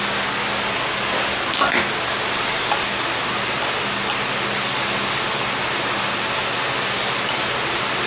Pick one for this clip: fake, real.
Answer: real